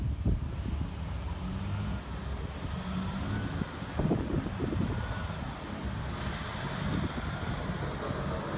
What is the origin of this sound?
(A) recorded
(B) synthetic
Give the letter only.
A